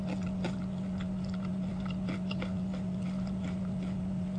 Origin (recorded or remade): recorded